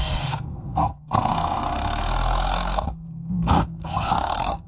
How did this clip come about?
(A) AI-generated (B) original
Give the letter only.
A